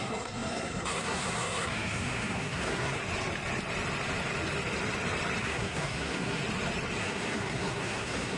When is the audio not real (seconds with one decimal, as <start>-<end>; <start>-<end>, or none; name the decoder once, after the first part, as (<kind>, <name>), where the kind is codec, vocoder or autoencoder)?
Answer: 0.0-3.0 (codec, SNAC); 5.4-6.4; 7.0-8.4